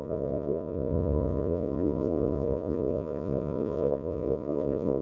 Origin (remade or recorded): remade